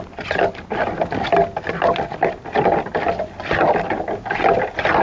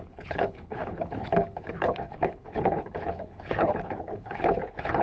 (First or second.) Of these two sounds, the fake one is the second